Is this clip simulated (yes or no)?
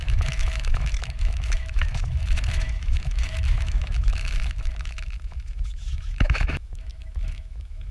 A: yes